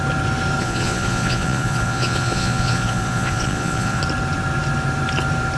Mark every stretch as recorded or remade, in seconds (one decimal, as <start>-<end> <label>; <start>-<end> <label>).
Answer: 0.0-0.6 recorded; 0.6-4.0 remade; 4.0-5.6 recorded